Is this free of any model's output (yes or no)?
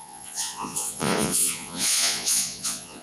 no